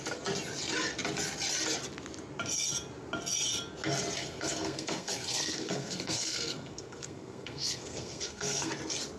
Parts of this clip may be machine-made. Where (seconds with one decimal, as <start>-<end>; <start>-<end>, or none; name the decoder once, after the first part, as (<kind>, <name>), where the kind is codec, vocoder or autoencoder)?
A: 4.2-8.7 (codec, SNAC)